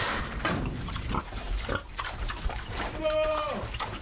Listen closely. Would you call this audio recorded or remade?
remade